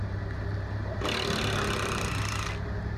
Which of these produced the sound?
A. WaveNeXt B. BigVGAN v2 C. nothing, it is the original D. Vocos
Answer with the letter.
C